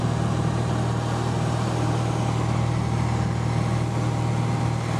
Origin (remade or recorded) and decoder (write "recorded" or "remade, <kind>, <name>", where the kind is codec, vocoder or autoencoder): recorded